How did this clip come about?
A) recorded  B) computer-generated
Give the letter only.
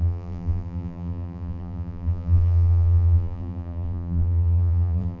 B